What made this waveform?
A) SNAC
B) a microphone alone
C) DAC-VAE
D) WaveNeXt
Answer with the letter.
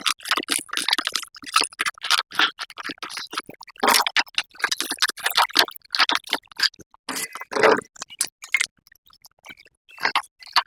B